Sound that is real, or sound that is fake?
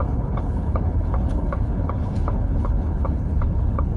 fake